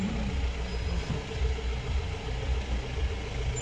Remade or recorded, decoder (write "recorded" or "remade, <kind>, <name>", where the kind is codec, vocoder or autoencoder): recorded